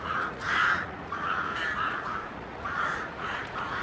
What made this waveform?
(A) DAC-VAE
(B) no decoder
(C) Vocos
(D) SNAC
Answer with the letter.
C